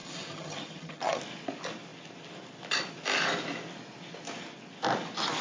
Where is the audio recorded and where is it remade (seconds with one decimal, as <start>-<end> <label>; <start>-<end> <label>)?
0.0-1.2 remade; 1.2-5.4 recorded